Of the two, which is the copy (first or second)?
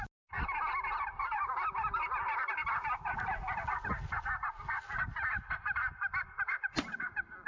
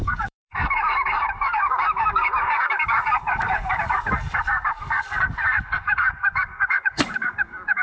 second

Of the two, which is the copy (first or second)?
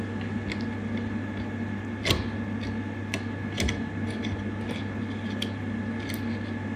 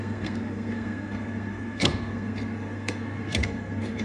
second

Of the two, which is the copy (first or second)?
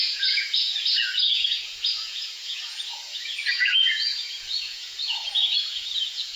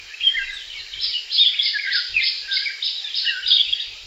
first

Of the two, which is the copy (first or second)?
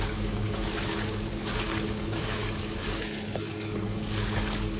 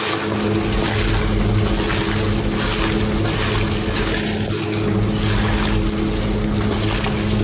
first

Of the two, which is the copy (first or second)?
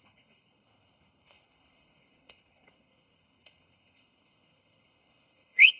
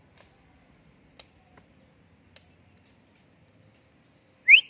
first